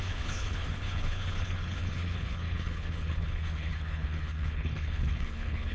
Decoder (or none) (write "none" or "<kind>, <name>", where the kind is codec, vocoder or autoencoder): codec, HILCodec